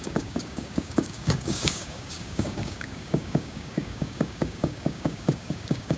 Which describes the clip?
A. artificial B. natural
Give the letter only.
A